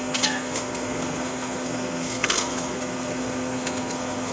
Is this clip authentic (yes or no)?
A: no